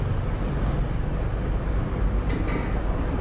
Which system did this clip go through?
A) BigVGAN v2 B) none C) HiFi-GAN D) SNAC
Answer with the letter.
B